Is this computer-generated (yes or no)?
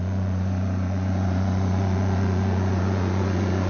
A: yes